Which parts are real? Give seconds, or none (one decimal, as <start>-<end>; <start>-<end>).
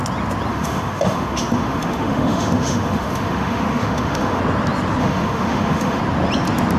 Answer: 0.0-0.5; 4.4-5.0; 6.0-6.8